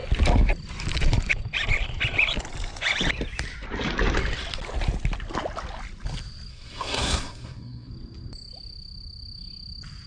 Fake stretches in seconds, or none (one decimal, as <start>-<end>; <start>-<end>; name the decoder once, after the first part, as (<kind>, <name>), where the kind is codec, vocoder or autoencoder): 6.5-7.9 (codec, SNAC)